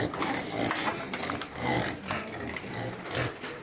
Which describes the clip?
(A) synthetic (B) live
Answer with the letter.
A